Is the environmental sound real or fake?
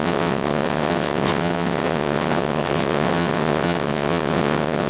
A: fake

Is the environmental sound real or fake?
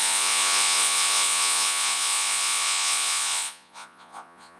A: fake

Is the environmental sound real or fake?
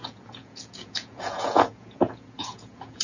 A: fake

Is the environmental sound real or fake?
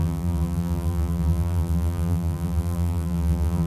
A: fake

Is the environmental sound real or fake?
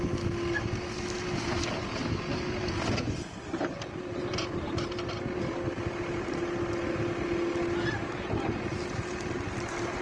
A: real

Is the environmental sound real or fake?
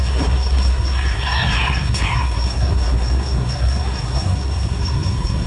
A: fake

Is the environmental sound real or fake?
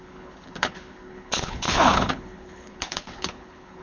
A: fake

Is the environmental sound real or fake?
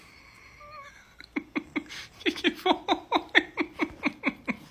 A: real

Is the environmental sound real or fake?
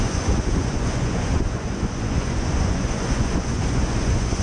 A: fake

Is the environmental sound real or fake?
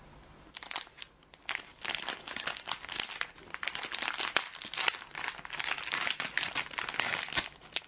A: real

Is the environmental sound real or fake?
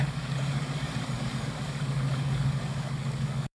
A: fake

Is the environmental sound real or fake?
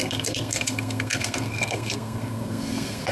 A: fake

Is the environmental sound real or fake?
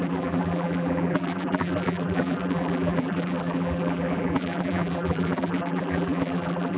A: fake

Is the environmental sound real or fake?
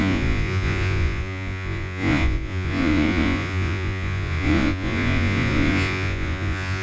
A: fake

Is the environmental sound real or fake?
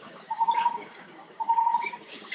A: fake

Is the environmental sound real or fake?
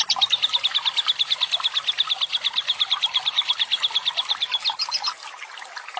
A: real